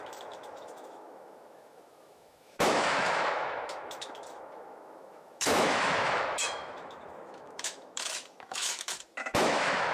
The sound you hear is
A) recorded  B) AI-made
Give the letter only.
B